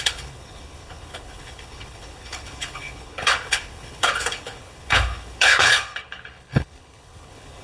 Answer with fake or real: fake